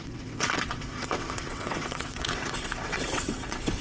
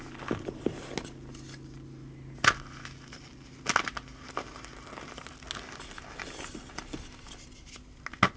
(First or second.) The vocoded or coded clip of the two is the first